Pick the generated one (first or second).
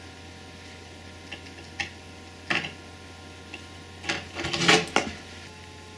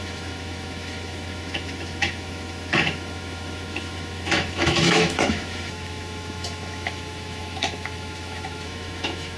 second